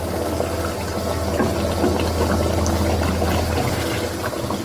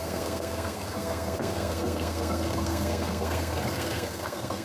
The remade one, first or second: second